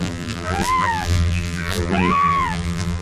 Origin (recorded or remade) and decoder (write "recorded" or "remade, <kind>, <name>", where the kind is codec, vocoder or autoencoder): remade, vocoder, BigVGAN v2